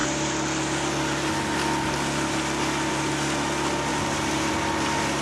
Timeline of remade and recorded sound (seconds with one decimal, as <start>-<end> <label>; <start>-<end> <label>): 0.0-5.2 recorded